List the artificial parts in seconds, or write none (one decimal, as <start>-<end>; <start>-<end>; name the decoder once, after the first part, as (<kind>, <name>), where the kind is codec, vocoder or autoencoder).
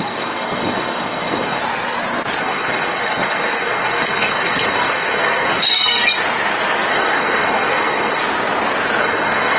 0.0-1.6 (codec, SNAC); 2.4-6.1; 6.9-8.2; 9.0-9.6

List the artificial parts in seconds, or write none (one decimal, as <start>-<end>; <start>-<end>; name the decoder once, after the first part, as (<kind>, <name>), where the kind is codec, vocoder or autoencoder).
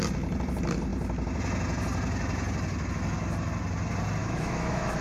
4.2-5.0 (autoencoder, DAC-VAE)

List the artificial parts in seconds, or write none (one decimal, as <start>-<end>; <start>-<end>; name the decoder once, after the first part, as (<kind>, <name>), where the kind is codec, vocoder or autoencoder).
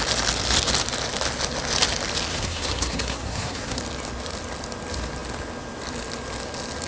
2.3-3.8 (codec, SNAC)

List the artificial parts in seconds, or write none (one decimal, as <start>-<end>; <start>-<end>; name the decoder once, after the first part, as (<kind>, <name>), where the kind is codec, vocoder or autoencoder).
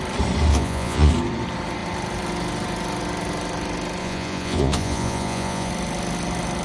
0.5-1.1 (vocoder, Vocos); 4.0-5.7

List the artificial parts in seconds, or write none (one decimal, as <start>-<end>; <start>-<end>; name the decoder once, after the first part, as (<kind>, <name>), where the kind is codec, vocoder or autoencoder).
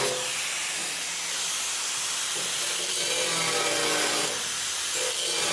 none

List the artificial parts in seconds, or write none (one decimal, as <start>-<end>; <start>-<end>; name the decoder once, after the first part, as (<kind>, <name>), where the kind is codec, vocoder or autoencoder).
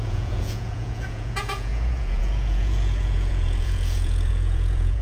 0.0-5.0 (vocoder, Vocos)